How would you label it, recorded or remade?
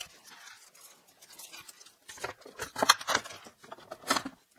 recorded